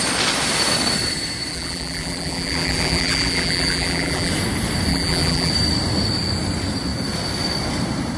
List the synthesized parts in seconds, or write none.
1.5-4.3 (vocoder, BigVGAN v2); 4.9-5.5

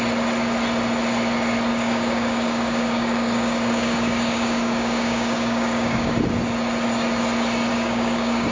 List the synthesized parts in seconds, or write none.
1.7-6.2 (codec, DAC); 7.7-8.5

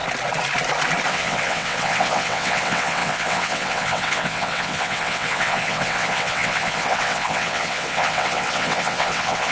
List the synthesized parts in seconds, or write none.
1.1-9.5 (vocoder, WaveNeXt)

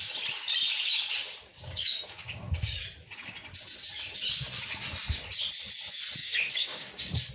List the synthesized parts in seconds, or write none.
1.5-2.8 (codec, DAC); 6.2-7.3

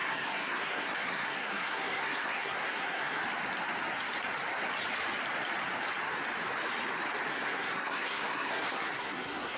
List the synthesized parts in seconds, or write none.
0.0-3.2 (codec, SNAC); 7.3-9.6